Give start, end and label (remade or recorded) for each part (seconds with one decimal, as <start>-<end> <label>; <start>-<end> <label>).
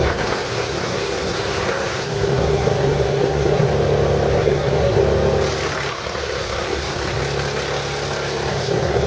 0.0-3.7 remade; 3.7-4.3 recorded; 4.3-5.0 remade; 5.0-5.9 recorded; 5.9-7.2 remade; 7.2-8.5 recorded; 8.5-9.1 remade